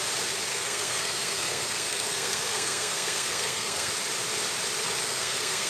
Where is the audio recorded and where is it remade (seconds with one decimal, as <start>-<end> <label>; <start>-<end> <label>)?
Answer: 0.0-0.5 recorded; 0.5-3.9 remade; 3.9-5.0 recorded; 5.0-5.7 remade